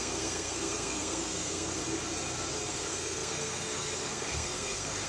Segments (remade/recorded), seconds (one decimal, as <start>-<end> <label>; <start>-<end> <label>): 0.0-1.8 remade; 1.8-2.7 recorded; 2.7-5.1 remade